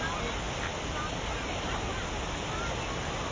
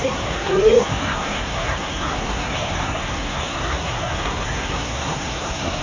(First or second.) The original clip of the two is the first